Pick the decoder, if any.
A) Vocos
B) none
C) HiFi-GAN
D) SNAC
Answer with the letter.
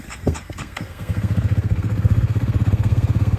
D